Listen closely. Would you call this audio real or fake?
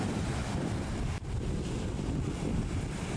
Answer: real